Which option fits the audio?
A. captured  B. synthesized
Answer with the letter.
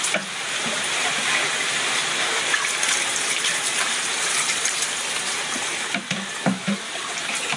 B